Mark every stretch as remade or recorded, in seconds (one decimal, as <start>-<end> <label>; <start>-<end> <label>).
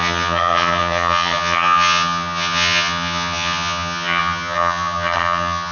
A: 0.0-5.7 remade